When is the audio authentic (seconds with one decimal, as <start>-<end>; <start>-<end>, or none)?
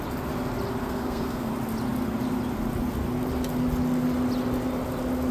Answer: 0.0-0.8; 1.5-5.3